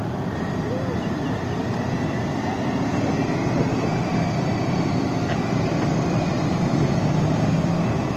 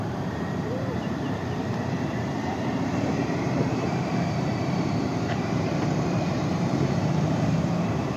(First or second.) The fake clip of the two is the second